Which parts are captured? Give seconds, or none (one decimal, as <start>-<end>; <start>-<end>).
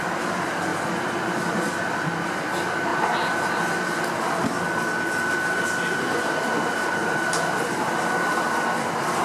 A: 0.0-9.2